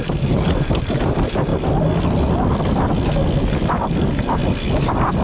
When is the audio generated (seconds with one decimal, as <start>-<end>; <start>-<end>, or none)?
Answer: none